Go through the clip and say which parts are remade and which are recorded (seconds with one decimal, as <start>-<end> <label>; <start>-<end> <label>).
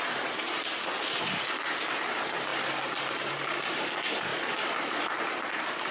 0.0-5.9 remade